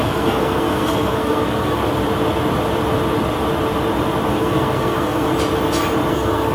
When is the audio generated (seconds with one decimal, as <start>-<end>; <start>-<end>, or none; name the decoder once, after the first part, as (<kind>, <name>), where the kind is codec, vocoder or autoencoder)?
0.0-1.8 (codec, SNAC); 4.3-5.3; 6.1-6.5